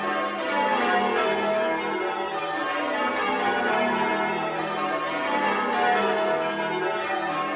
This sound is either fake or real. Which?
real